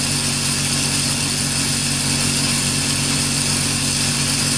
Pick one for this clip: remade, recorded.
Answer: recorded